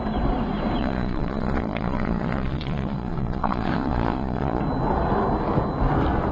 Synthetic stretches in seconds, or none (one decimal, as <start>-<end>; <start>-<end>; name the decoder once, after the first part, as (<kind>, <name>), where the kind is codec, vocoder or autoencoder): 0.8-4.6 (vocoder, Vocos)